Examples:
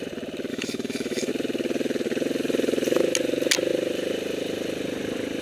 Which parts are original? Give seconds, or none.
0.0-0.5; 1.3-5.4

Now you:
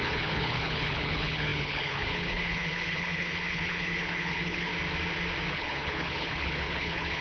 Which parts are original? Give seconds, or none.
4.7-5.5